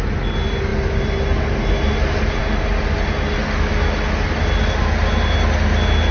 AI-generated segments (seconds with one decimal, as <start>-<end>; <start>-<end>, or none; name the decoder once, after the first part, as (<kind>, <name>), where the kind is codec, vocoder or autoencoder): none